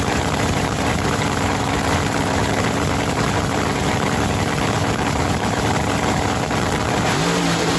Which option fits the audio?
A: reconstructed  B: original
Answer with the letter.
A